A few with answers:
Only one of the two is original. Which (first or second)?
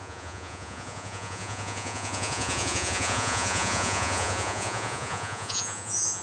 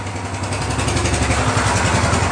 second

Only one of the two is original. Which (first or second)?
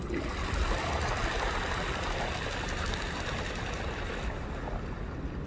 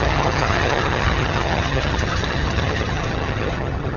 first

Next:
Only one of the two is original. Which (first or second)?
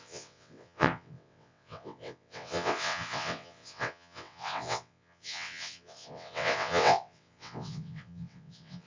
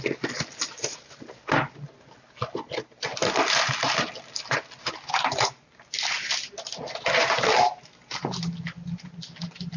second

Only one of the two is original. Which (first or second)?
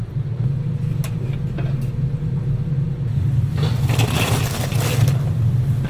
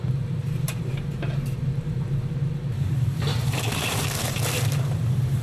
first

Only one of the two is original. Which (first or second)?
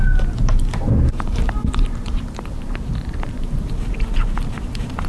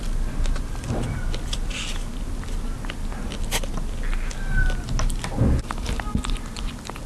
second